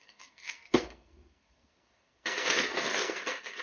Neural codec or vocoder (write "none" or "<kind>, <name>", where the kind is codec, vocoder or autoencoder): codec, SNAC